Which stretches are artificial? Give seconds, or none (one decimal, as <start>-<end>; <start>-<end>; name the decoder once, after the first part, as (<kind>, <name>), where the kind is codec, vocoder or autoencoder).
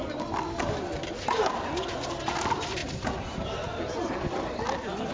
none